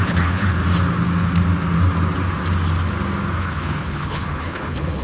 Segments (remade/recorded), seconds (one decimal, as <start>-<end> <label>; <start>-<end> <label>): 0.0-0.6 remade; 0.6-3.4 recorded; 3.4-5.0 remade